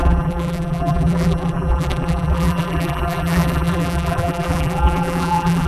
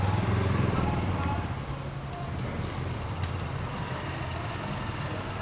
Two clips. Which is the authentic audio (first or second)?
second